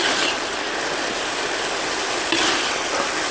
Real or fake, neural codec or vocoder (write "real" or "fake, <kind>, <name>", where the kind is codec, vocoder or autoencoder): real